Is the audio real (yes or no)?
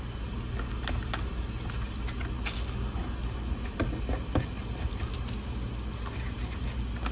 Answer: yes